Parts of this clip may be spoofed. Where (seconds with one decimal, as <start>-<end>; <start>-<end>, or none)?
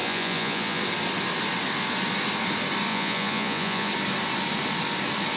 0.0-0.8; 2.9-3.9